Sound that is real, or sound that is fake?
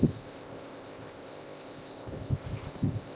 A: fake